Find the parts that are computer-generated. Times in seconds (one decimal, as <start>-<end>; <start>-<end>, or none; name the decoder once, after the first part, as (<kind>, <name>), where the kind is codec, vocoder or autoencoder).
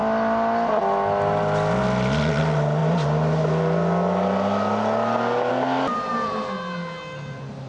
none